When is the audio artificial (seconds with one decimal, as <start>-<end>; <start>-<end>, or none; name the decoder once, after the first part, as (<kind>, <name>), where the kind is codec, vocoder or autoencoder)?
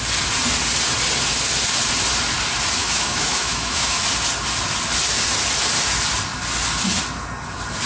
2.8-4.0 (autoencoder, DAC-VAE)